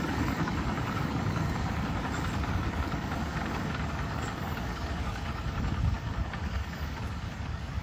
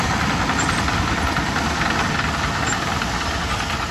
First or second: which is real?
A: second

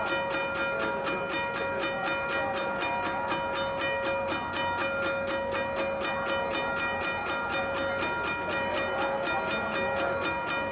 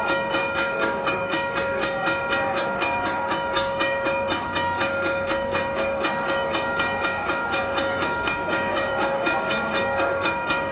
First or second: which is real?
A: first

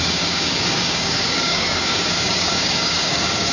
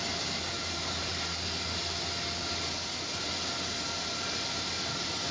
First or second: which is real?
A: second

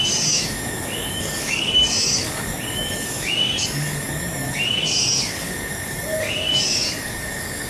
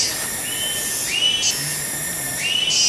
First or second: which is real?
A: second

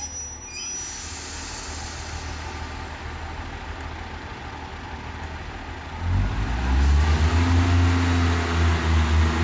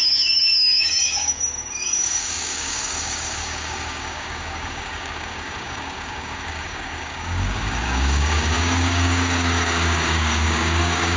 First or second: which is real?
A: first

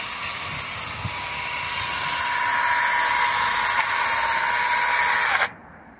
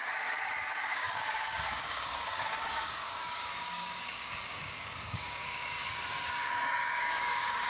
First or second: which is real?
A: first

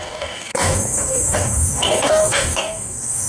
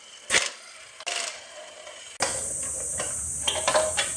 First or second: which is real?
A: second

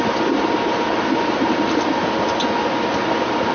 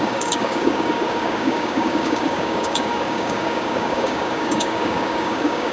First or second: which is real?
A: first